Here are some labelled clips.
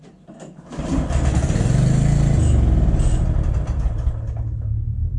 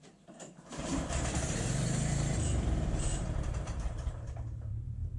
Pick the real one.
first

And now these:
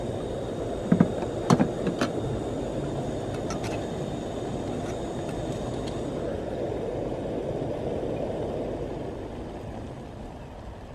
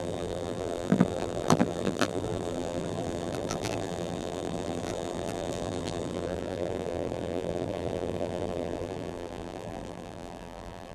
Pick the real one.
first